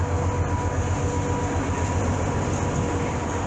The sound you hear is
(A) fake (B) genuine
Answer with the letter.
B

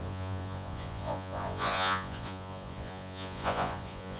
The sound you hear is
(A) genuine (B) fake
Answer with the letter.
B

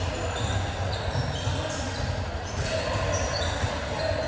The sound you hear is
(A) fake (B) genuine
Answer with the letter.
B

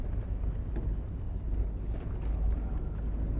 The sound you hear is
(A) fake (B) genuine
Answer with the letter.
B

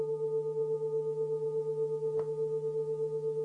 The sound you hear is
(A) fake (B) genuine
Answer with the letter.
B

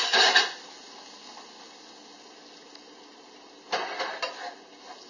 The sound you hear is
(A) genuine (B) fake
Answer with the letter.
A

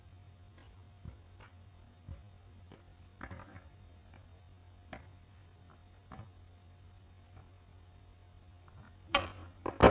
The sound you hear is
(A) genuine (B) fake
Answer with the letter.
A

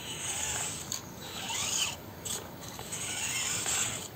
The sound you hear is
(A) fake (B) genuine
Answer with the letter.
A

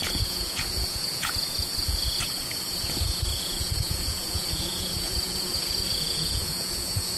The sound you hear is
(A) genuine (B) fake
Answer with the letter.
B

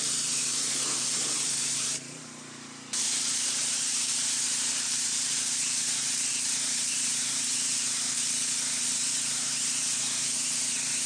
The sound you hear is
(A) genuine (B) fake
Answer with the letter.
B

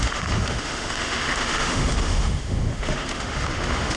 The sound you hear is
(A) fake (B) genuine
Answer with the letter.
A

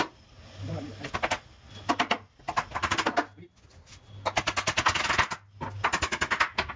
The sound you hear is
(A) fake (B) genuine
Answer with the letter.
B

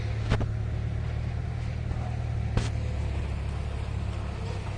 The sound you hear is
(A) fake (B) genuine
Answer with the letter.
B